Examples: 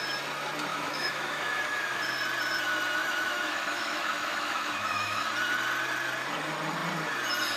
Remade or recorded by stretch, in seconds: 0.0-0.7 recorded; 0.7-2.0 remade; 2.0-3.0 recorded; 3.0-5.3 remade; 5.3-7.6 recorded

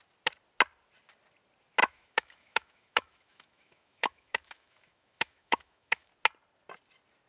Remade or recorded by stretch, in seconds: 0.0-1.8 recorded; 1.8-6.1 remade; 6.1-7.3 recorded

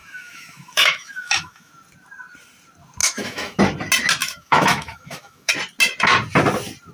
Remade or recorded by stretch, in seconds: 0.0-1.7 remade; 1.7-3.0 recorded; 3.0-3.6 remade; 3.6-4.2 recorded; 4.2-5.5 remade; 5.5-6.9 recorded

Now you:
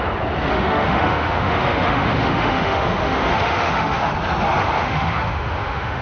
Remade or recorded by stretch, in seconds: 0.0-0.5 recorded; 0.5-4.1 remade; 4.1-4.6 recorded; 4.6-6.0 remade

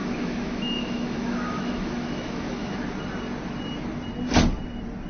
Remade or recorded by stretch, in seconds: 0.0-2.8 remade; 2.8-5.1 recorded

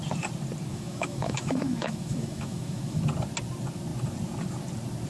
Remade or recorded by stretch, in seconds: 0.0-0.7 recorded; 0.7-3.0 remade; 3.0-5.1 recorded

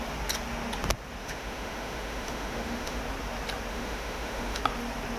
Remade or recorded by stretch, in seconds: 0.0-1.2 recorded; 1.2-3.0 remade; 3.0-3.7 recorded; 3.7-4.6 remade; 4.6-5.2 recorded

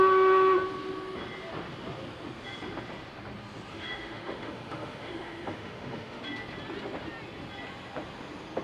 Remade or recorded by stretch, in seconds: 0.0-3.7 recorded; 3.7-6.2 remade; 6.2-8.6 recorded